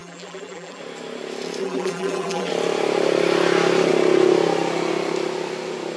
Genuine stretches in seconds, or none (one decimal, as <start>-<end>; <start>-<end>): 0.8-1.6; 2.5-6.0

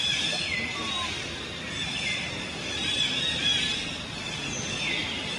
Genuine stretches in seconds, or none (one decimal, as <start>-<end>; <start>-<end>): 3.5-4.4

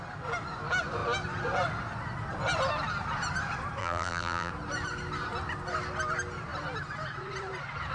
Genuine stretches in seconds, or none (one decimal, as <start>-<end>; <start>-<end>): 0.0-3.8; 4.5-7.9

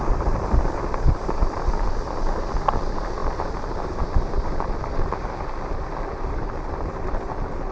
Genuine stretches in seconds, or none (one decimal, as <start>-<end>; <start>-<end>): 0.0-3.2; 6.2-7.7

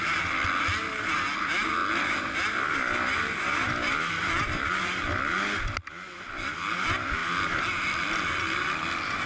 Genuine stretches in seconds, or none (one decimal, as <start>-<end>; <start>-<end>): 0.0-9.3